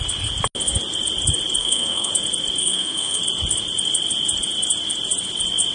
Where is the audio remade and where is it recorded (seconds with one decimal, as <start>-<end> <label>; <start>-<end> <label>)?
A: 0.0-1.6 recorded; 1.6-2.1 remade; 2.1-2.6 recorded; 2.6-3.2 remade; 3.2-5.7 recorded